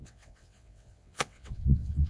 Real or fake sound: fake